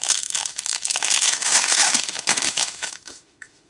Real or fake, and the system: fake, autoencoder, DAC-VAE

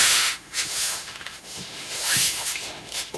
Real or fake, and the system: fake, autoencoder, DAC-VAE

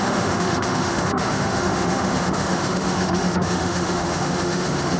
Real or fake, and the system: fake, autoencoder, DAC-VAE